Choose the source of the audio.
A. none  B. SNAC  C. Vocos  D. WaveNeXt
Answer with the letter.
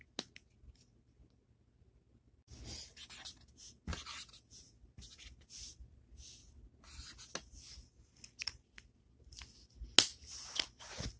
A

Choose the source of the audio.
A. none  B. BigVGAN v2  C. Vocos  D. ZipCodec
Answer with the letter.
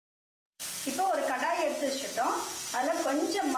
C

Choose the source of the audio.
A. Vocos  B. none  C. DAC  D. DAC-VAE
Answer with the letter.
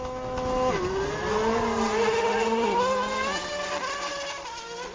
B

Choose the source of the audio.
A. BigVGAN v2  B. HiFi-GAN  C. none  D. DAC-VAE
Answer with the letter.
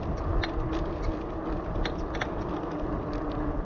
C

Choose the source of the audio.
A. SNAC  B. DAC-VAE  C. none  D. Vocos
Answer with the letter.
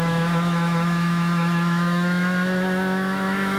B